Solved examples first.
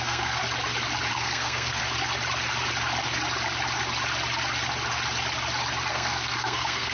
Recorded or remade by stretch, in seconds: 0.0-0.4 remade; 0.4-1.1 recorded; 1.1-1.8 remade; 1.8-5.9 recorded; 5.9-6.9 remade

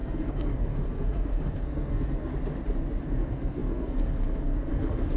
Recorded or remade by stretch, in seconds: 0.0-2.3 remade; 2.3-3.0 recorded; 3.0-5.2 remade